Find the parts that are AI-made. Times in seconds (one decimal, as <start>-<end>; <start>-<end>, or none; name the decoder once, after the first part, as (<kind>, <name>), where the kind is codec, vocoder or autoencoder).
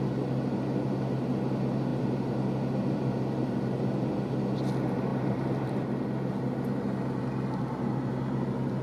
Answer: none